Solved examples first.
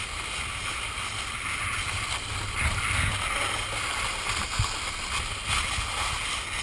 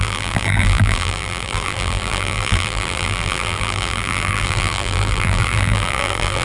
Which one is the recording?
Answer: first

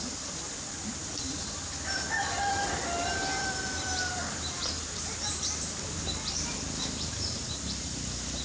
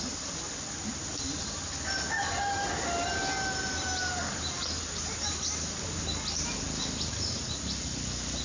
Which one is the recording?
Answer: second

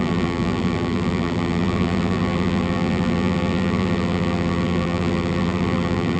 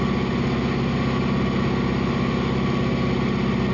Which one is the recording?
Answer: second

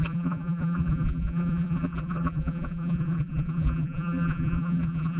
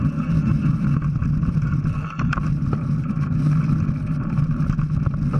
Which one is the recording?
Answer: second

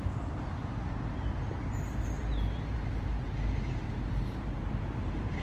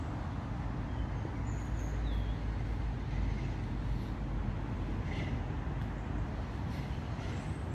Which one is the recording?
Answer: second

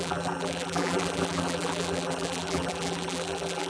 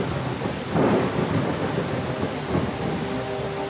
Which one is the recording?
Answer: second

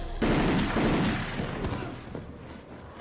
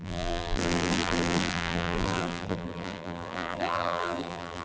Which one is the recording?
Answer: first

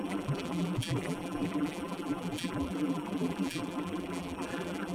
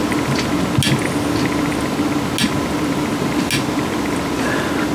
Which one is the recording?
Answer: second